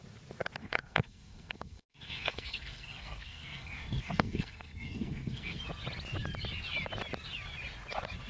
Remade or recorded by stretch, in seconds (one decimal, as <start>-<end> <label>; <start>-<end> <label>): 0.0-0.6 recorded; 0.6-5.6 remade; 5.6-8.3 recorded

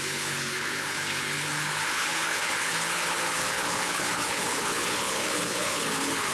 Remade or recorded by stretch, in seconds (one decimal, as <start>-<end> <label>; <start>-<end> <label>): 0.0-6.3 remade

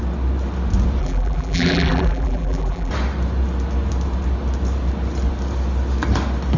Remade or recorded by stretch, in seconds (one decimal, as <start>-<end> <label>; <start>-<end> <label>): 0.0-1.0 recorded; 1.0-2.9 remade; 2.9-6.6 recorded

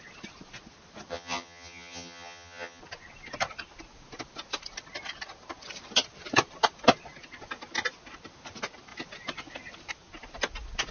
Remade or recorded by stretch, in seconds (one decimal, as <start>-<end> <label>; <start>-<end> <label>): 0.0-1.1 recorded; 1.1-2.8 remade; 2.8-10.9 recorded

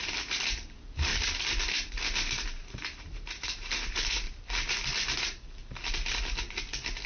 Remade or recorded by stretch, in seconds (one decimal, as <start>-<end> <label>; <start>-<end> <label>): 0.0-2.6 recorded; 2.6-4.7 remade; 4.7-7.1 recorded

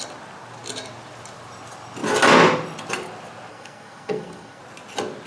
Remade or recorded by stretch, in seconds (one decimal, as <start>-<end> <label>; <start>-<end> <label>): 0.0-3.5 recorded; 3.5-4.6 remade; 4.6-5.3 recorded